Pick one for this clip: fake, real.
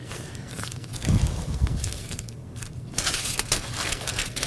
fake